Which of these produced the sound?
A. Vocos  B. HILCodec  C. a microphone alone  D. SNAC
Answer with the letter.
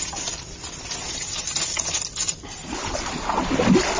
C